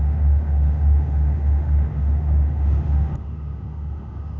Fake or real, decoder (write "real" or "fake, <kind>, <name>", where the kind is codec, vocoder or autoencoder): fake, autoencoder, DAC-VAE